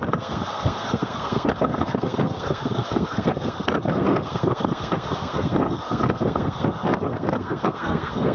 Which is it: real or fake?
fake